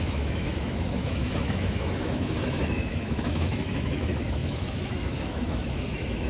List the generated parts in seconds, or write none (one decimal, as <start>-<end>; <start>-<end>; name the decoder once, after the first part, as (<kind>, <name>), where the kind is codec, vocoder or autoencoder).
0.0-6.3 (autoencoder, DAC-VAE)